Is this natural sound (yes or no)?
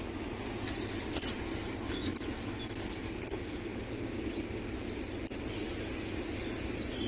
yes